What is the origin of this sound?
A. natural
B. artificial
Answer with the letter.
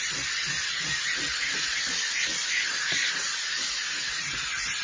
A